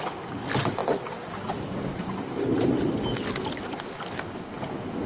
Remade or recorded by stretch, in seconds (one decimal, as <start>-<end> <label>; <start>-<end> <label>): 0.0-5.1 recorded